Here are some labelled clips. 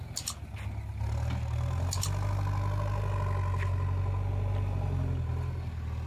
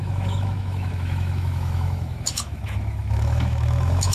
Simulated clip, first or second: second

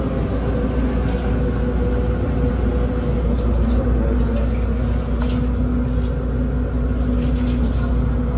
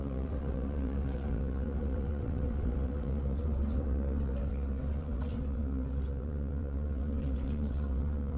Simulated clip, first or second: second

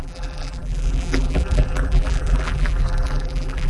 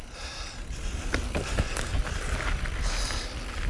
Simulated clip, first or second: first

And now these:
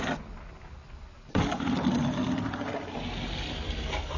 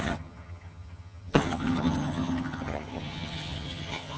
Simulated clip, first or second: second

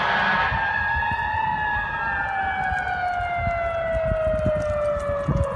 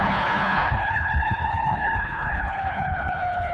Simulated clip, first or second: second